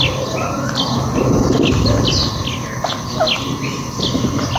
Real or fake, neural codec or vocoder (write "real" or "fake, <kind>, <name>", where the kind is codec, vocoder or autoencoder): real